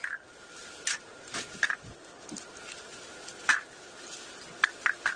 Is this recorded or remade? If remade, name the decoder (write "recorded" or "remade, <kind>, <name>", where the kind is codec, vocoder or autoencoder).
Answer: recorded